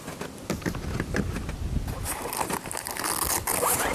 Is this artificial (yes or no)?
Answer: no